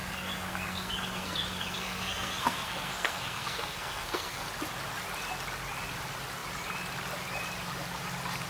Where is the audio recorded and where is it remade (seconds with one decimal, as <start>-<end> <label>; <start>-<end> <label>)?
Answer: 0.0-4.5 remade; 4.5-8.5 recorded